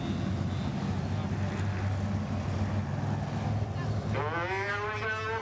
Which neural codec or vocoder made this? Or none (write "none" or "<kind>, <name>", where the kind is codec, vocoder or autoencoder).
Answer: none